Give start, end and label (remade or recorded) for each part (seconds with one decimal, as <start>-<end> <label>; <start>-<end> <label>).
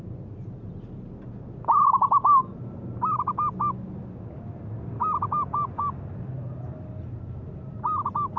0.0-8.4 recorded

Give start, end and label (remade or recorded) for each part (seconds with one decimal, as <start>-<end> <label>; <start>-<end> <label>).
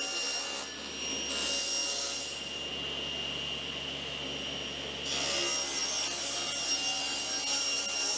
0.0-8.2 recorded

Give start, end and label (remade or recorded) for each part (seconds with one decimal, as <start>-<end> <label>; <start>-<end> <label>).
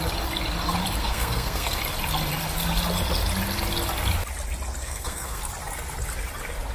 0.0-1.0 recorded; 1.0-1.8 remade; 1.8-4.8 recorded; 4.8-5.4 remade; 5.4-6.7 recorded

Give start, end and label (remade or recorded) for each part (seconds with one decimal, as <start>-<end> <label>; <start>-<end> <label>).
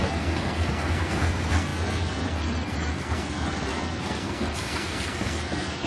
0.0-5.9 remade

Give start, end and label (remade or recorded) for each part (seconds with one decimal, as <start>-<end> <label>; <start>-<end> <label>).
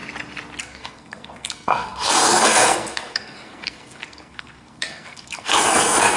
0.0-0.6 recorded; 0.6-6.2 remade